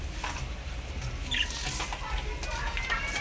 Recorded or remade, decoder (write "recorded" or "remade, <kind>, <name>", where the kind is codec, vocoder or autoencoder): recorded